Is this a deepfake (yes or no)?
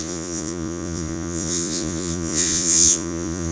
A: yes